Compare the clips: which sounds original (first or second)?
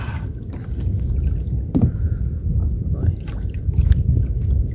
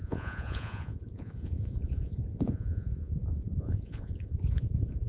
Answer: first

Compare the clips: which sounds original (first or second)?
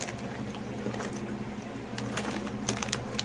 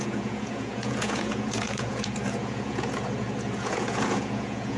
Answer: first